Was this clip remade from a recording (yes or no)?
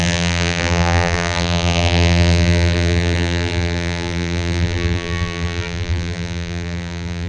yes